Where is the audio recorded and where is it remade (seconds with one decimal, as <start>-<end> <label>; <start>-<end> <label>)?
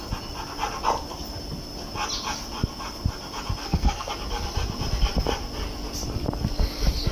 0.0-3.6 recorded; 3.6-4.1 remade; 4.1-7.1 recorded